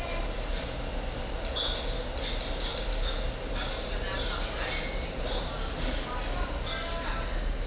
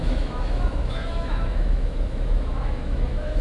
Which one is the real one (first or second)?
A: first